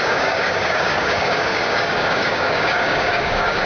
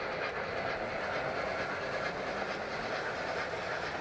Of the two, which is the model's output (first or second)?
first